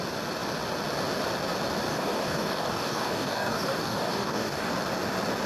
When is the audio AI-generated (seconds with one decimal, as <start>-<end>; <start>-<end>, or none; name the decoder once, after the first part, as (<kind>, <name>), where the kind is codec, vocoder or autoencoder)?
1.9-4.7 (codec, DAC)